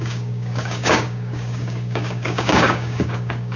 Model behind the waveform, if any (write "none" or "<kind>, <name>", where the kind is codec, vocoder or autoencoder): codec, DAC